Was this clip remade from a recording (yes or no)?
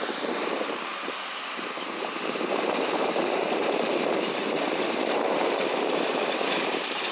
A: yes